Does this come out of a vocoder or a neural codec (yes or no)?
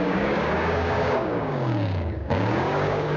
yes